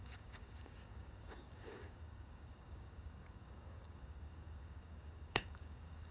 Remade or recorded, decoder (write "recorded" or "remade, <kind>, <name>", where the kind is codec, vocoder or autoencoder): remade, codec, DAC